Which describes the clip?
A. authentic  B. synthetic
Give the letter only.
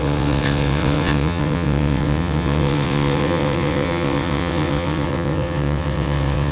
B